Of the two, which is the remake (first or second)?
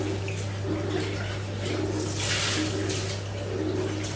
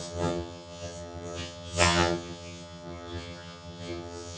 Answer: second